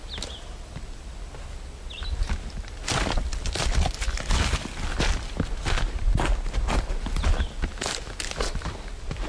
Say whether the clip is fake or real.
real